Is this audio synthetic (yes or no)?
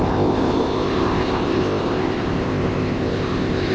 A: yes